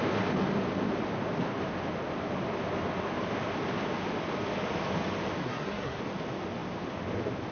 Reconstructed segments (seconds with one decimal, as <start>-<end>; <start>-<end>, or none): 5.4-6.0